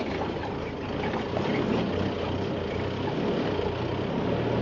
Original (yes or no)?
yes